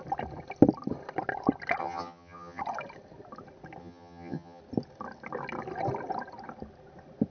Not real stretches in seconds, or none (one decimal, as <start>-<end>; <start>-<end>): 1.8-2.6; 3.8-4.6